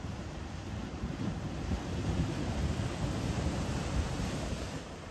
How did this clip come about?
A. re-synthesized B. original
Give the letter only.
A